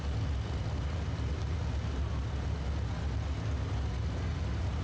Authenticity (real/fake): real